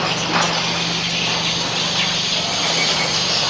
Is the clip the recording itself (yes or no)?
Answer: yes